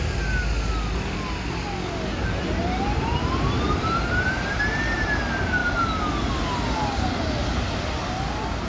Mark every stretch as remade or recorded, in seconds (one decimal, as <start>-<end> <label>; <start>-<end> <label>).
0.0-2.1 recorded; 2.1-4.6 remade; 4.6-5.6 recorded; 5.6-6.1 remade; 6.1-8.7 recorded